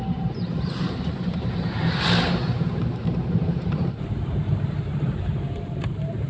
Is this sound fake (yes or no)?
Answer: yes